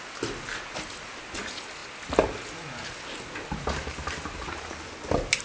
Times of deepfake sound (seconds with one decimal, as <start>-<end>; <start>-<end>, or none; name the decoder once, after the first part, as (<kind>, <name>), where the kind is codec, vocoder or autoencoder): none